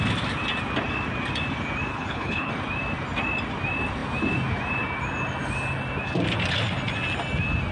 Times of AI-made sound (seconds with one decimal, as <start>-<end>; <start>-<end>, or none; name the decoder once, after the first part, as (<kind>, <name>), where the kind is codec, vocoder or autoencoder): 1.9-2.5 (codec, HILCodec)